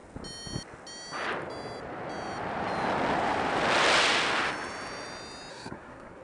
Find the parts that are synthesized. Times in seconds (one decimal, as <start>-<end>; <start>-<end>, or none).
5.5-6.2

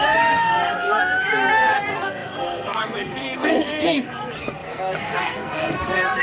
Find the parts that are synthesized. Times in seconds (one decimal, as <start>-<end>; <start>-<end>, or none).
0.0-6.2

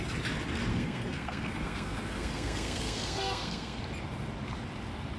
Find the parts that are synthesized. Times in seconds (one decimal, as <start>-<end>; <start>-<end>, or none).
0.7-3.8

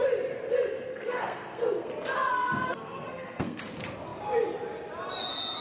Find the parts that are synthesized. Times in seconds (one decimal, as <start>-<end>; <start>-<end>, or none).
0.9-1.9; 2.3-3.6

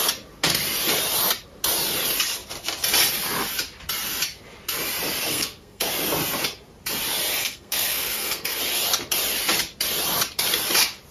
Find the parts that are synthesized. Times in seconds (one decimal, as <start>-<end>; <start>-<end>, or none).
5.3-5.9; 7.4-8.6

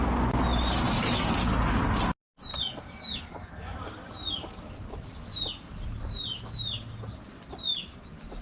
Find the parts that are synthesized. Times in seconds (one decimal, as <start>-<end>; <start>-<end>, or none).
none

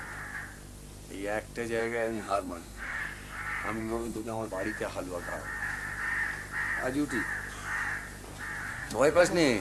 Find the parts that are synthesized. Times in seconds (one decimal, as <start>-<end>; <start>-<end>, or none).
1.8-3.0; 3.8-4.5; 8.7-9.2